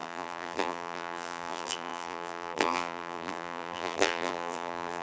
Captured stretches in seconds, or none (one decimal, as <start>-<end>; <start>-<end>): none